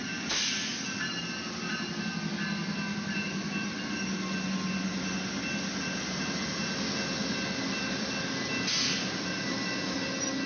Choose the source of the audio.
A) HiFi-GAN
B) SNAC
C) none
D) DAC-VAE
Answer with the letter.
C